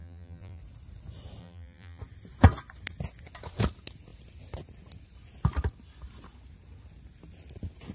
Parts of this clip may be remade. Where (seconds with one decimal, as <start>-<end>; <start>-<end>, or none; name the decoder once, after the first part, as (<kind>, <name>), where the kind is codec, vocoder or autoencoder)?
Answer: 0.0-0.6 (vocoder, BigVGAN v2); 1.4-2.0